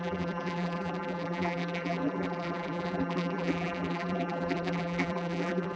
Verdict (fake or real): fake